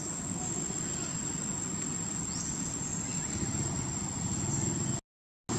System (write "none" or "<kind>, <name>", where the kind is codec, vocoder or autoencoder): none